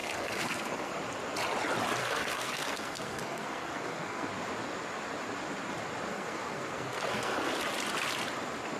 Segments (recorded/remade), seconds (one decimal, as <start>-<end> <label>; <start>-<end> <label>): 0.0-0.9 remade; 0.9-2.0 recorded; 2.0-4.3 remade; 4.3-6.1 recorded; 6.1-7.5 remade; 7.5-8.8 recorded